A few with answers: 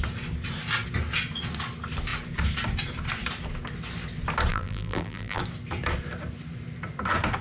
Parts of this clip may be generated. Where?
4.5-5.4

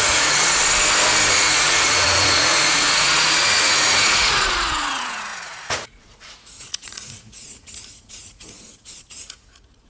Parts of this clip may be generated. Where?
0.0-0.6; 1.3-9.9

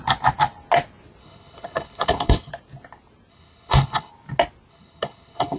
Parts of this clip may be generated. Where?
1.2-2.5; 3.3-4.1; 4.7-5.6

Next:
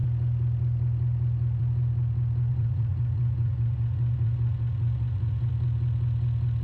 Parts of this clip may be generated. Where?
2.5-5.5

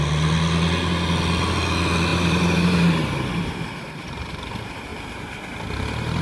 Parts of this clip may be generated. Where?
2.1-4.5; 4.9-5.4